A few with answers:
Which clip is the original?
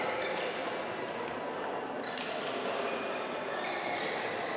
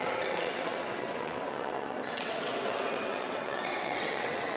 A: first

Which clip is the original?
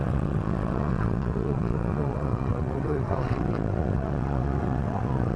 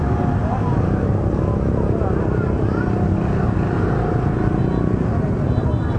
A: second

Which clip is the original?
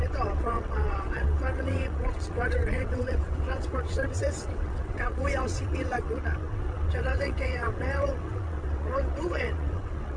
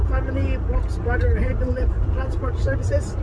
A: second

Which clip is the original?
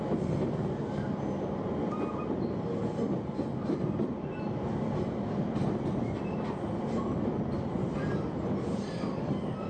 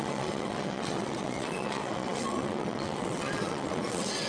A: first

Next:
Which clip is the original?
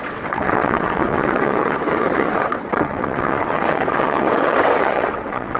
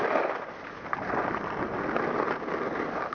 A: second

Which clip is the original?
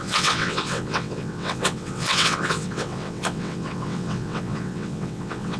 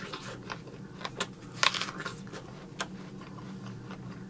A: second